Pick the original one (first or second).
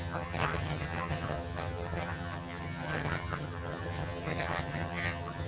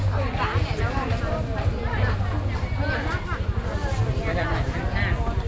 second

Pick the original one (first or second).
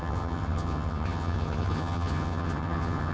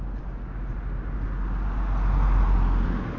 second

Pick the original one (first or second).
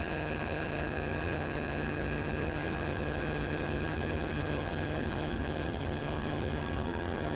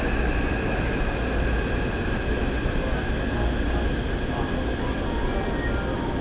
second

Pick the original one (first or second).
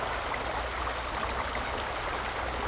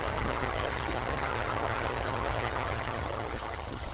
first